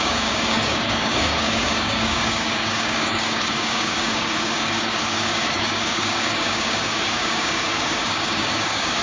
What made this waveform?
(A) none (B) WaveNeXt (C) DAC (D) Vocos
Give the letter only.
C